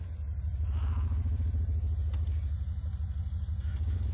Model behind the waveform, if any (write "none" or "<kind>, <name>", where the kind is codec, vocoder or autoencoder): none